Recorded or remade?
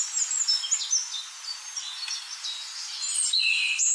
recorded